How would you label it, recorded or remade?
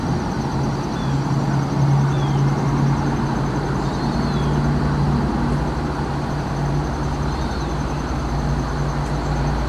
recorded